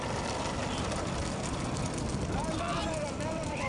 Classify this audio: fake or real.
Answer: real